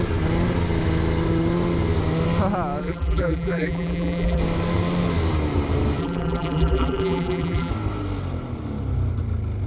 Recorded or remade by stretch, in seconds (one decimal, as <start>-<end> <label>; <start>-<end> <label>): 0.0-2.8 recorded; 2.8-4.4 remade; 4.4-6.0 recorded; 6.0-7.7 remade; 7.7-9.7 recorded